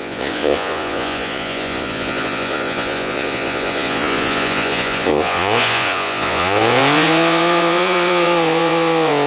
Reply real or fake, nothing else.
fake